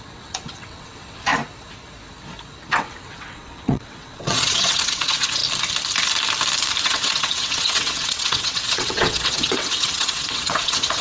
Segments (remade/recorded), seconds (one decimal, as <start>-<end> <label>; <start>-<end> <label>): 0.0-1.3 remade; 1.3-2.7 recorded; 2.7-5.4 remade; 5.4-6.8 recorded; 6.8-11.0 remade